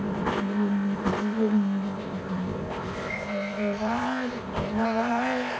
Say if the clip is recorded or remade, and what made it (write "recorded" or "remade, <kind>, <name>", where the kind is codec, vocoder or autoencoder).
remade, codec, ZipCodec